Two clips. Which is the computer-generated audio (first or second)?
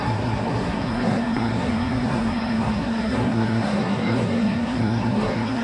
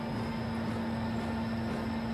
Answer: first